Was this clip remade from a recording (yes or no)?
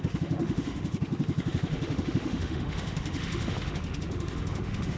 yes